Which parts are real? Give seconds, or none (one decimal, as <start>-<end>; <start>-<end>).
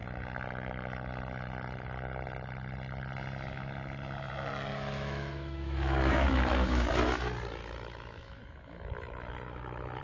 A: 0.0-4.7; 6.9-7.6